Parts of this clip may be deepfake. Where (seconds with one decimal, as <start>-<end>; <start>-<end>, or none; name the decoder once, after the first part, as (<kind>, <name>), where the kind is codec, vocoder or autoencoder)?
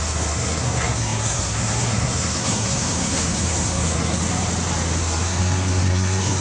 0.0-4.2 (codec, SNAC); 5.0-6.4